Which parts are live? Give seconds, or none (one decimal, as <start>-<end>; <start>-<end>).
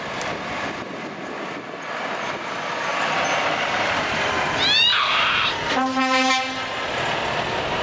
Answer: 0.0-7.8